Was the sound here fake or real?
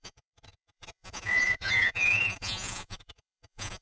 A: fake